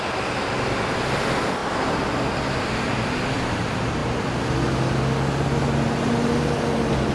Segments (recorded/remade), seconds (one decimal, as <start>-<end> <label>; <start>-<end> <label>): 0.0-7.1 recorded